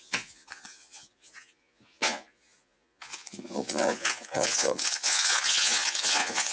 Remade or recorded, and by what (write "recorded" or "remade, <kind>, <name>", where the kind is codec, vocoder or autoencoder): remade, vocoder, Vocos